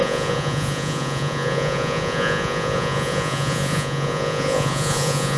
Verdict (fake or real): fake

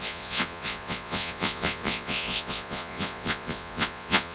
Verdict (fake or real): fake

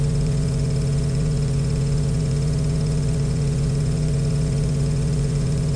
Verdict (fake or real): fake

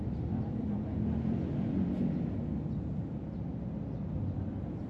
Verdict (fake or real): fake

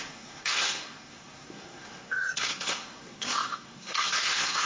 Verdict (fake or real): fake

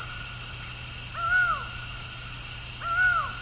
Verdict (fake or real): real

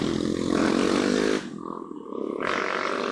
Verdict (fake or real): real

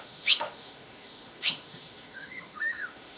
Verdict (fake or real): fake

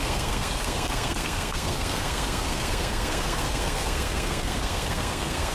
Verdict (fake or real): fake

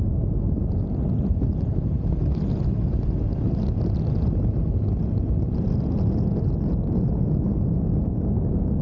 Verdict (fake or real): real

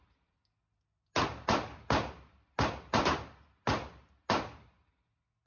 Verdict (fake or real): real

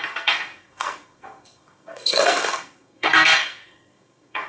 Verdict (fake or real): fake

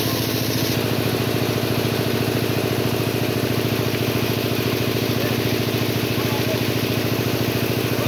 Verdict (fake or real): real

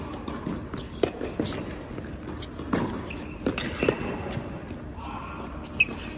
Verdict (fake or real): real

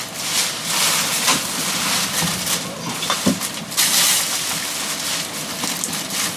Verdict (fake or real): real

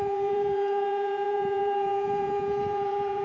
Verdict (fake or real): fake